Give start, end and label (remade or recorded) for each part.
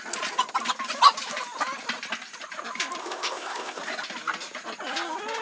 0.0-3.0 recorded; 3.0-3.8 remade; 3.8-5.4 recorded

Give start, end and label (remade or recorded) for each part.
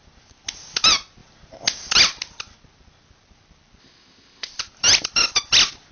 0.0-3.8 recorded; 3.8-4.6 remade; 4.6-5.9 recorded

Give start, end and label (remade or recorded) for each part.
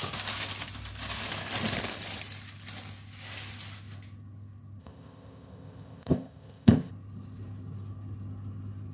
0.0-4.8 recorded; 4.8-6.9 remade; 6.9-8.9 recorded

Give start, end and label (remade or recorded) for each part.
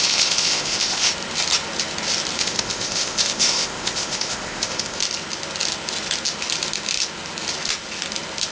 0.0-1.1 remade; 1.1-2.4 recorded; 2.4-5.0 remade; 5.0-8.5 recorded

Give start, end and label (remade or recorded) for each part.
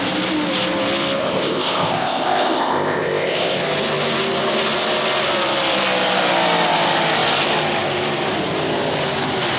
0.0-1.2 recorded; 1.2-3.6 remade; 3.6-9.6 recorded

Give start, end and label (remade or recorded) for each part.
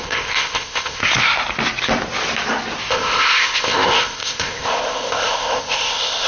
0.0-1.0 remade; 1.0-2.9 recorded; 2.9-6.3 remade